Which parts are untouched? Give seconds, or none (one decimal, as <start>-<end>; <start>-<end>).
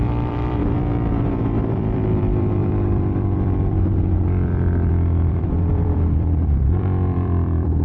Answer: 0.6-1.2